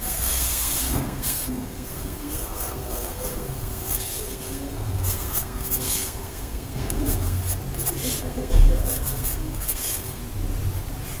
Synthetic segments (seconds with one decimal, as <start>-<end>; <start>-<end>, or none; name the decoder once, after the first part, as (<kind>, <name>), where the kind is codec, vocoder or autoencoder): 0.0-7.4 (codec, SNAC); 8.2-10.2